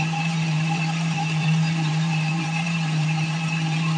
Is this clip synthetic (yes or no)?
yes